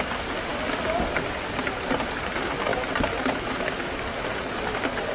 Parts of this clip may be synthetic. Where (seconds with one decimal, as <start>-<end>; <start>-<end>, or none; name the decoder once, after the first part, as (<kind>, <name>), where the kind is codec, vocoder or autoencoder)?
none